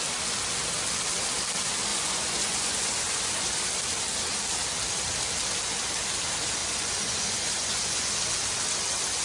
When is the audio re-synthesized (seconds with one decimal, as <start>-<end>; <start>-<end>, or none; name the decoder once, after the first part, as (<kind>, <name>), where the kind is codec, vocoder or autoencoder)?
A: 1.9-3.6 (vocoder, Vocos); 6.6-8.1